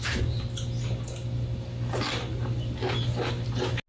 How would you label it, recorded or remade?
recorded